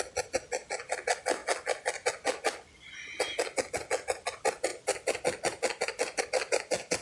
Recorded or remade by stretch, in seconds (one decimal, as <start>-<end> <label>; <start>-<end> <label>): 0.0-7.0 recorded

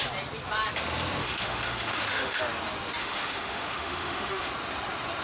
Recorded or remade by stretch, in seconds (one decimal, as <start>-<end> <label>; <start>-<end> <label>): 0.0-1.2 recorded; 1.2-2.4 remade; 2.4-3.0 recorded; 3.0-4.5 remade; 4.5-5.2 recorded